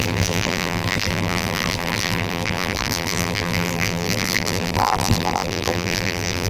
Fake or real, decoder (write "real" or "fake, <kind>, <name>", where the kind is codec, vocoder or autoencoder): fake, vocoder, BigVGAN v2